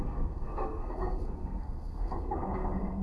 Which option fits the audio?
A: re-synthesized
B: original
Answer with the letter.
A